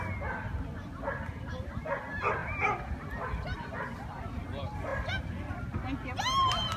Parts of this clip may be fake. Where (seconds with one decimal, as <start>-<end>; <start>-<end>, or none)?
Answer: none